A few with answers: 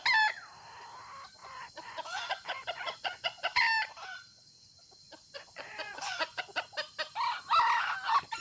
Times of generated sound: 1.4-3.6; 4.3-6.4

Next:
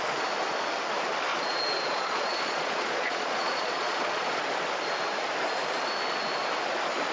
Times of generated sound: 1.3-4.4

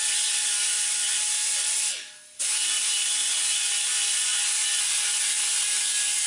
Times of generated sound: none

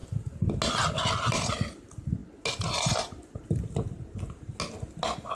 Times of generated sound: none

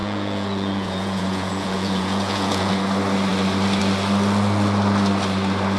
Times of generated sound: 0.0-2.7